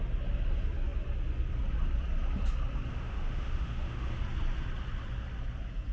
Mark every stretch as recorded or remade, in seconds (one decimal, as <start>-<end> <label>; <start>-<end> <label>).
0.0-2.9 recorded; 2.9-4.2 remade; 4.2-5.9 recorded